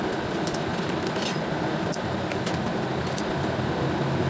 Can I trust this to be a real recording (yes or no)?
yes